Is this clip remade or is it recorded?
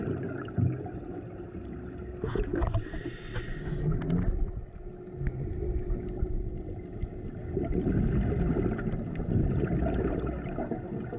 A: recorded